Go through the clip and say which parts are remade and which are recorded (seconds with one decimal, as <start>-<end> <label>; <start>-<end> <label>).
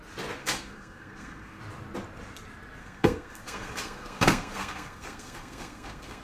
0.0-0.4 recorded; 0.4-1.6 remade; 1.6-2.8 recorded; 2.8-6.2 remade